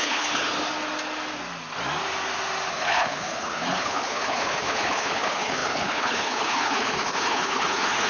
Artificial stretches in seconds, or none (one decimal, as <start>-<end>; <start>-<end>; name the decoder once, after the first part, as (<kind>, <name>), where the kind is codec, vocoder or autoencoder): 0.0-0.5 (codec, HILCodec); 2.7-8.1